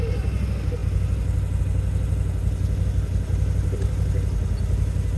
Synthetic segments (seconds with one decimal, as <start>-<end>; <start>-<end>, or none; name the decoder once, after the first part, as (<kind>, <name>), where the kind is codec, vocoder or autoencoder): none